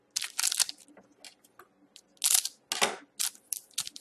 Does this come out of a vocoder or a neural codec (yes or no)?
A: no